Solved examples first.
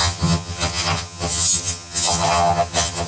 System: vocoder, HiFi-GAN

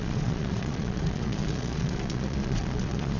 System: vocoder, Vocos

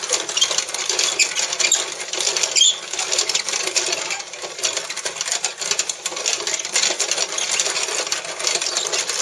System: none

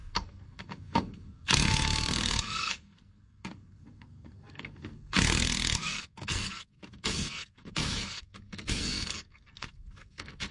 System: codec, SNAC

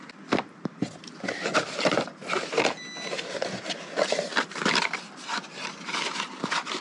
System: none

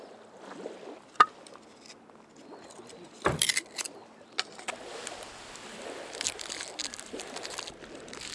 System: none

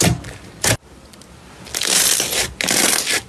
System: none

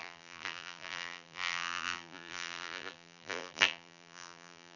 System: vocoder, BigVGAN v2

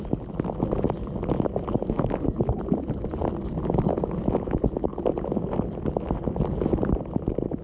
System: none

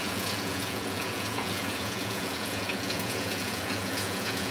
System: vocoder, Vocos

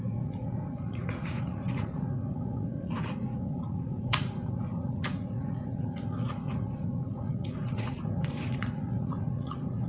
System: vocoder, Vocos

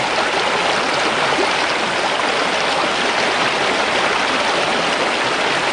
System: none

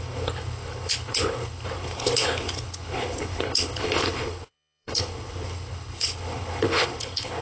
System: codec, HILCodec